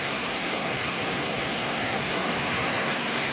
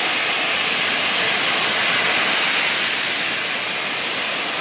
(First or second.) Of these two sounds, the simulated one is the first